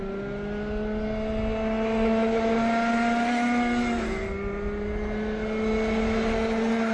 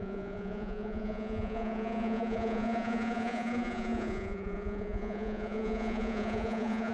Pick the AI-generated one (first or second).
second